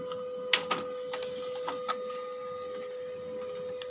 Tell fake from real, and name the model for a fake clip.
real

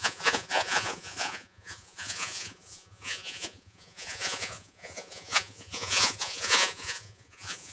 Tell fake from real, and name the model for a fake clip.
fake, vocoder, Vocos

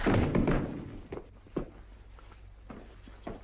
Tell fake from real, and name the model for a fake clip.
real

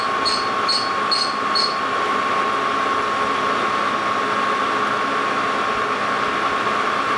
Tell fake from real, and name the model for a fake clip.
real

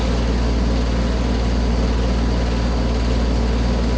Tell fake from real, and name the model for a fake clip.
real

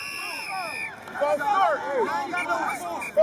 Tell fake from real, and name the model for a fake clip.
real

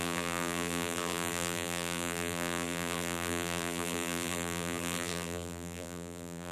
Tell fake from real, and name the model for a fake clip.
fake, vocoder, BigVGAN v2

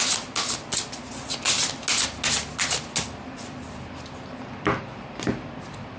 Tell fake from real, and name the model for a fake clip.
real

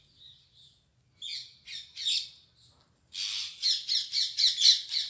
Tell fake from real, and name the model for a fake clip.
real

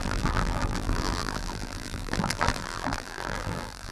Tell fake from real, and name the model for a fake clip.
fake, vocoder, BigVGAN v2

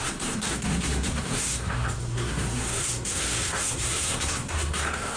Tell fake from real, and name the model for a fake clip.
fake, codec, SNAC